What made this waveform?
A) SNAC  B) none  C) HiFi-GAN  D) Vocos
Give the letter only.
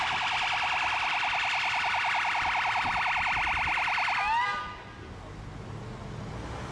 B